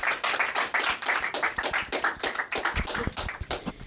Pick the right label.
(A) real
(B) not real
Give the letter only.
A